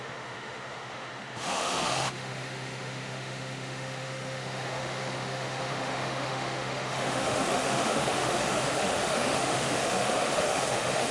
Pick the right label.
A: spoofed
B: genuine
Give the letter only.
A